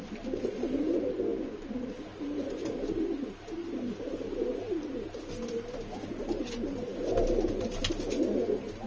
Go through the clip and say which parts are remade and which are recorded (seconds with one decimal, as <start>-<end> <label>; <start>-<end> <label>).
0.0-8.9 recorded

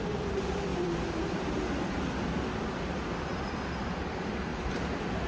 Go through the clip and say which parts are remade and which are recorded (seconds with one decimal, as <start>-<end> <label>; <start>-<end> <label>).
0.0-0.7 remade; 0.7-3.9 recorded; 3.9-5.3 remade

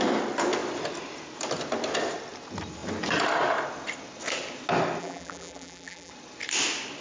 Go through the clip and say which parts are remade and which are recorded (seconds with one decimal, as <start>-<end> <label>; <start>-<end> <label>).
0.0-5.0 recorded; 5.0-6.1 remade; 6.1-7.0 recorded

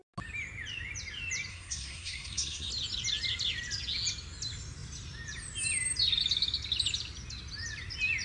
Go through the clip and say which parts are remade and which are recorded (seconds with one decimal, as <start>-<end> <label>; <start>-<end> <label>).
0.0-1.5 recorded; 1.5-2.7 remade; 2.7-8.2 recorded

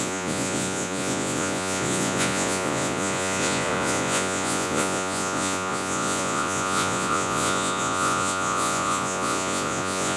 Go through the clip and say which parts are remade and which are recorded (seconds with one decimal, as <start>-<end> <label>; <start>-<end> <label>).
0.0-10.2 remade

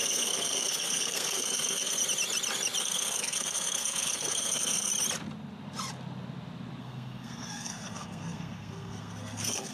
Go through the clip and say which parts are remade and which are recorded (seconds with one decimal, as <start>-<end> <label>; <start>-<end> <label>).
0.0-2.0 remade; 2.0-2.8 recorded; 2.8-4.9 remade; 4.9-6.8 recorded; 6.8-9.7 remade